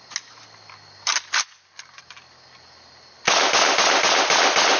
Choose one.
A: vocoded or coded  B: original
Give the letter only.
B